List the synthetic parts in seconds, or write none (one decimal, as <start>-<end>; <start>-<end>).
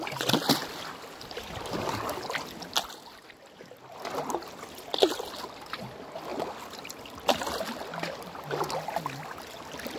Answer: none